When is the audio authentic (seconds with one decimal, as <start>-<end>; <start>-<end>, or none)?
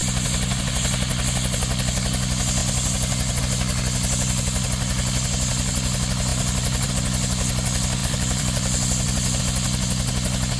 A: 0.0-6.3; 6.9-8.0; 9.4-10.6